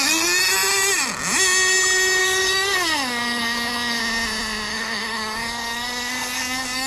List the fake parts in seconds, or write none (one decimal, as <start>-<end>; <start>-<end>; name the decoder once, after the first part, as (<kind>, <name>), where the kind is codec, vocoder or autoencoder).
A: 2.2-4.0 (codec, DAC); 4.7-6.9